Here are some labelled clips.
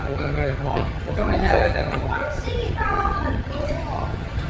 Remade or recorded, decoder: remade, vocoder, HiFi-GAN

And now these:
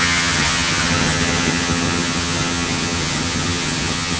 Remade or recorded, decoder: remade, vocoder, HiFi-GAN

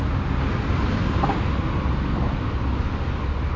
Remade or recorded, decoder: recorded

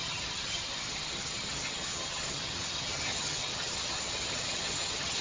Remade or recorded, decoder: remade, vocoder, HiFi-GAN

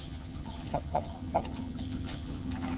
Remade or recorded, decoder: remade, vocoder, HiFi-GAN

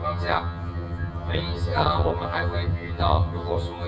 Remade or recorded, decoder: remade, vocoder, HiFi-GAN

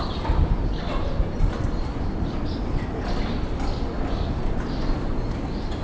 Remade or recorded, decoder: recorded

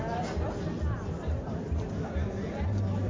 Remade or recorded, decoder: recorded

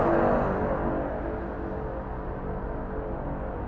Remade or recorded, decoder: recorded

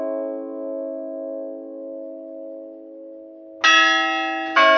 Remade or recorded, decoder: recorded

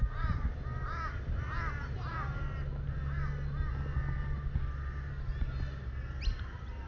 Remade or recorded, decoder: recorded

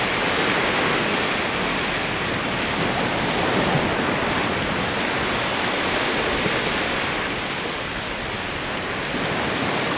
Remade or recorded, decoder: recorded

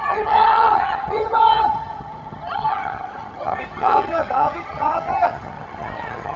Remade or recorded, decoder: remade, vocoder, HiFi-GAN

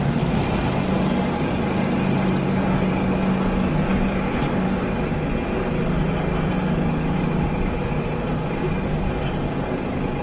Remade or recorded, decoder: recorded